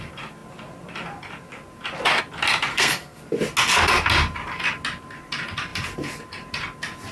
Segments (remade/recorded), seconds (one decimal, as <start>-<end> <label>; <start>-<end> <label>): 0.0-2.7 recorded; 2.7-3.2 remade; 3.2-7.1 recorded